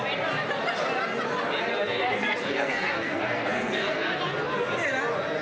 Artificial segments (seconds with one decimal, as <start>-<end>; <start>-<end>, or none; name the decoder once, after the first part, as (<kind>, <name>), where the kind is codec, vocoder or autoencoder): 1.7-4.2 (codec, SNAC)